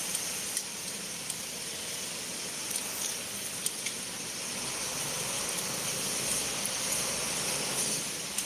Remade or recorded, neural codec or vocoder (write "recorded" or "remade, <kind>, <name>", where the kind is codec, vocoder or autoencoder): recorded